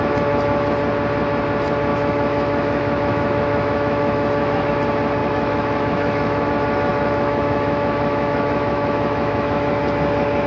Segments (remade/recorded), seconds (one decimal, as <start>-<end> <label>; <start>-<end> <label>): 0.0-1.9 recorded; 1.9-4.7 remade; 4.7-5.2 recorded; 5.2-6.5 remade; 6.5-6.9 recorded; 6.9-9.7 remade; 9.7-10.5 recorded